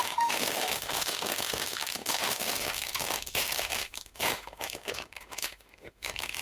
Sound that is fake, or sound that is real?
fake